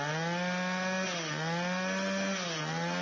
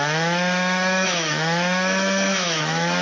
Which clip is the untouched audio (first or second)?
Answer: first